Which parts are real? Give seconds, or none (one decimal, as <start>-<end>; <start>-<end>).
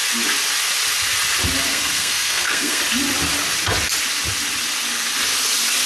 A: 0.0-1.7; 2.8-5.9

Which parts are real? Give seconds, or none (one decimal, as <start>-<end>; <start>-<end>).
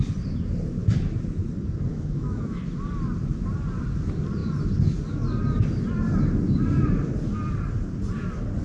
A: 0.0-1.9; 2.6-8.6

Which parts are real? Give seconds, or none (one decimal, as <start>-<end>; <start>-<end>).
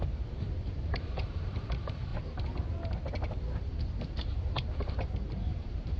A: 2.1-3.6